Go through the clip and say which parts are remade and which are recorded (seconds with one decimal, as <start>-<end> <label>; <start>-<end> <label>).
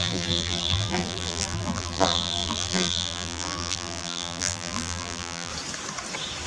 0.0-5.5 remade; 5.5-6.5 recorded